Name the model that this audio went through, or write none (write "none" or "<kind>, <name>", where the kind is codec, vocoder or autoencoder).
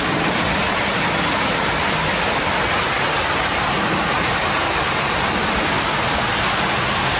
none